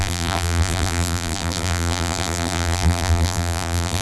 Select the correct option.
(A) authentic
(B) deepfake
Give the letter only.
B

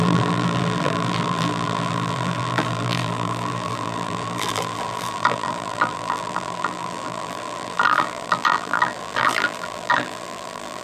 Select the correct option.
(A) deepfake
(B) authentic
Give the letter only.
A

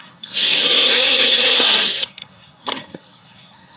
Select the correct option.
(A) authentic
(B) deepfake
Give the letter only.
B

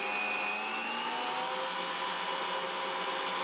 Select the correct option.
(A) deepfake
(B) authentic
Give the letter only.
B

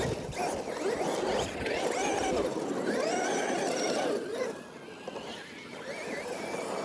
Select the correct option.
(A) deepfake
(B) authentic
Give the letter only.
B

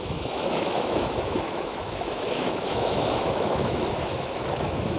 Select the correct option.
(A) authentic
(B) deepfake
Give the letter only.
B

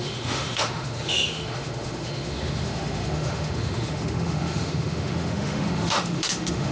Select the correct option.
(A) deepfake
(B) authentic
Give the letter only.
A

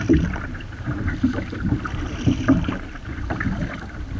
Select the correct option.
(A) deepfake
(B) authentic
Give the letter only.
B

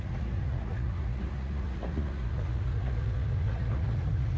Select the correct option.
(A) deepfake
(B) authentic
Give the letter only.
A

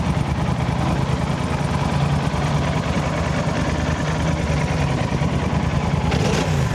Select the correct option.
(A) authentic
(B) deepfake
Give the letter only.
B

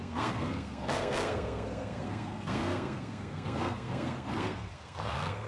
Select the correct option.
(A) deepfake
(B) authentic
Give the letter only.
A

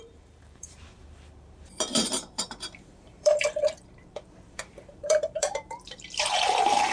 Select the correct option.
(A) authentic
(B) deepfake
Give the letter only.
B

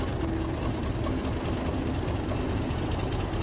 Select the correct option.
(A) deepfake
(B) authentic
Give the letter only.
B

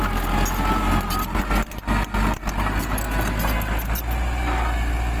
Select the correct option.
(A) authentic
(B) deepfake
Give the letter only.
A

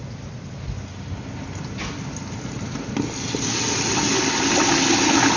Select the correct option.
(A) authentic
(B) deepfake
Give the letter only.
A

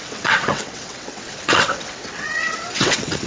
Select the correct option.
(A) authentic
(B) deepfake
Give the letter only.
B